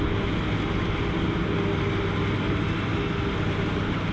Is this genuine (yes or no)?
yes